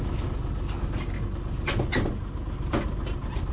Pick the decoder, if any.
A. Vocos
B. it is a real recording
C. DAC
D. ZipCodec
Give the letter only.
B